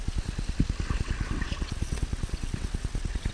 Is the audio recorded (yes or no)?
no